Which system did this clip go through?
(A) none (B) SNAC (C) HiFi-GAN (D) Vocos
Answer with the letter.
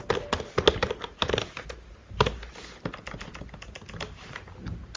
A